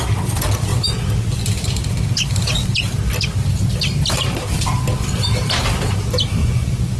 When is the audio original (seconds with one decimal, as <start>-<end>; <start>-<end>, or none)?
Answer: 0.0-6.4